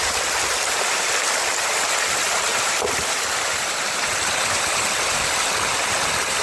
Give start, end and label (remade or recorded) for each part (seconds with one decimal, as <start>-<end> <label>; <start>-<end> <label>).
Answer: 0.0-2.5 recorded; 2.5-6.4 remade